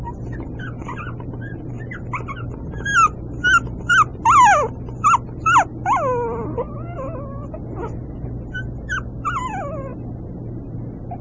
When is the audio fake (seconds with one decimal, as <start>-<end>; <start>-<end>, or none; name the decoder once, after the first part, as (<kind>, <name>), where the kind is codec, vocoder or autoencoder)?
none

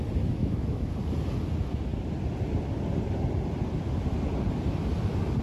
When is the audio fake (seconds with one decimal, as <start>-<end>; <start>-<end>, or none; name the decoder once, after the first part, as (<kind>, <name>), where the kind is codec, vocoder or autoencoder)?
0.4-0.9 (autoencoder, DAC-VAE)

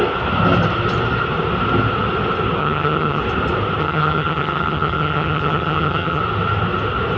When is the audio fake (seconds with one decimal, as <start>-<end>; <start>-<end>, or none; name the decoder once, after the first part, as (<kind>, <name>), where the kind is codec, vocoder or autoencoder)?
2.6-3.2 (vocoder, HiFi-GAN); 3.8-6.2

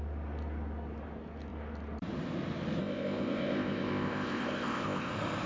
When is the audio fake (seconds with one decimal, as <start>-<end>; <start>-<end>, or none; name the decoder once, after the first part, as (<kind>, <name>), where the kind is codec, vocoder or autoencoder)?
2.8-5.1 (codec, ZipCodec)